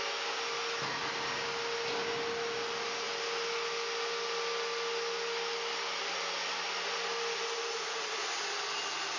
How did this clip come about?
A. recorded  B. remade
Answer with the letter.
A